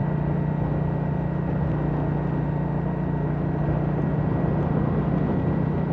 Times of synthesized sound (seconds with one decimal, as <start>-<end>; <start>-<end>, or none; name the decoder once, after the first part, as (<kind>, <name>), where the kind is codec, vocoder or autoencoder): none